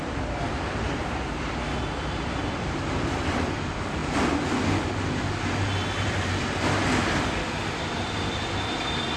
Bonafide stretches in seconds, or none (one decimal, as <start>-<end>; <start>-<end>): 4.0-7.3